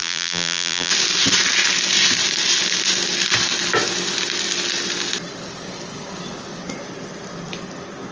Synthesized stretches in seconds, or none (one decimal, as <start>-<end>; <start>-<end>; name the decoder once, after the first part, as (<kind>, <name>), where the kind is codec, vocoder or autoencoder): 0.0-0.9 (vocoder, BigVGAN v2)